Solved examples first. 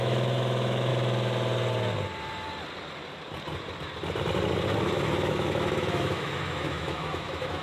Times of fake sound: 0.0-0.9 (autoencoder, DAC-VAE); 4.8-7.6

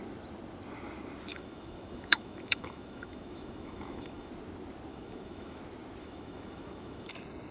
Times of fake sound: 1.3-4.3 (autoencoder, DAC-VAE); 4.9-5.6; 6.0-7.1

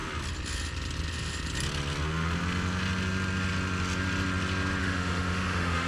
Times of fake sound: 4.8-5.9 (autoencoder, DAC-VAE)

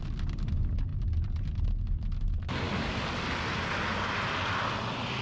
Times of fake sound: none

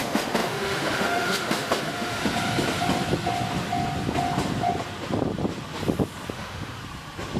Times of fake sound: 0.0-2.2 (autoencoder, DAC-VAE); 6.3-6.8

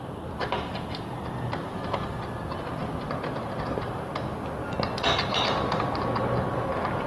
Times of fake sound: none

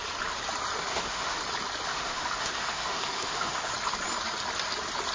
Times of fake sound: 0.9-1.4 (autoencoder, DAC-VAE); 1.9-3.7

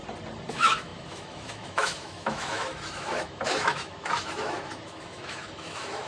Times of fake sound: 0.5-6.1 (autoencoder, DAC-VAE)